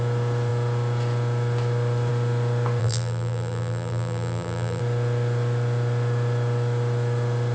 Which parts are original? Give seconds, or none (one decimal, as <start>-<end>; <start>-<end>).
0.0-2.8; 4.8-7.5